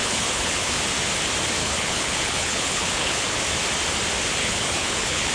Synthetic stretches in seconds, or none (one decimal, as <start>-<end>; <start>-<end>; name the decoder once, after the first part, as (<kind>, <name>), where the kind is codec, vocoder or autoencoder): 0.0-0.8 (codec, HILCodec); 1.6-3.4; 4.4-5.3